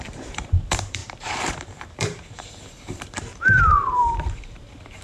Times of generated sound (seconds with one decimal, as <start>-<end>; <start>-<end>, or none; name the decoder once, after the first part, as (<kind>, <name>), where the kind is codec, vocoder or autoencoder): 0.0-5.0 (vocoder, BigVGAN v2)